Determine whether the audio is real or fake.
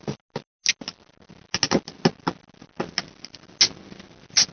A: real